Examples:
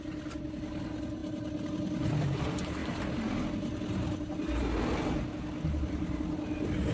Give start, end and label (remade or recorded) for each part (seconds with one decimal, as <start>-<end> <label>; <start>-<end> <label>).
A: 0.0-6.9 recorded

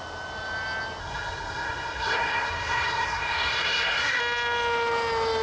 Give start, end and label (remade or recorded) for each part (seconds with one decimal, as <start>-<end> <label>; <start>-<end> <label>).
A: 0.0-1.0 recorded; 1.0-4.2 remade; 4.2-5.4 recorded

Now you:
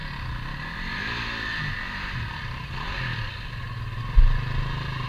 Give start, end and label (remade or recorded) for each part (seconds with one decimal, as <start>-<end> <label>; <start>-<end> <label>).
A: 0.0-5.1 recorded

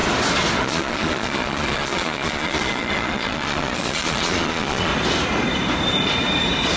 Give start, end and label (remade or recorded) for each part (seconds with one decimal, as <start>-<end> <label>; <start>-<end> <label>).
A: 0.0-0.6 recorded; 0.6-4.9 remade; 4.9-6.8 recorded